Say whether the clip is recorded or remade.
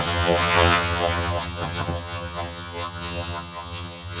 remade